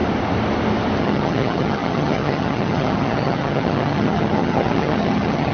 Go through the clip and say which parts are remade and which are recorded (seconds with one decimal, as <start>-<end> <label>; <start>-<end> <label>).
0.0-1.0 recorded; 1.0-5.5 remade